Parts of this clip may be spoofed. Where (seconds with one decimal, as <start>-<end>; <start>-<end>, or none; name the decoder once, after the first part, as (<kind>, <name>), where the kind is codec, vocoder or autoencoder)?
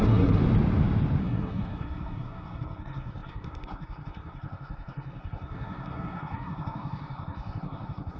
0.0-0.4 (codec, SNAC); 1.2-8.2